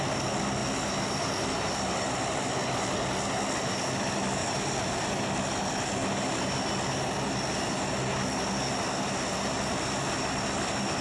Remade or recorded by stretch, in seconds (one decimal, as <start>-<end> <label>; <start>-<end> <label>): 0.0-11.0 recorded